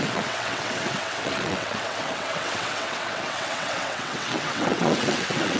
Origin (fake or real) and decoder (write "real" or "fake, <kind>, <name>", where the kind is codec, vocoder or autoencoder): fake, vocoder, WaveNeXt